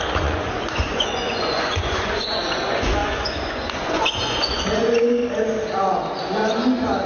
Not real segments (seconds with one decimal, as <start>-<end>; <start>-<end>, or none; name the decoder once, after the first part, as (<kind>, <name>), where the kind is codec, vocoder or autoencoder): 0.0-5.2 (vocoder, Vocos); 5.8-6.4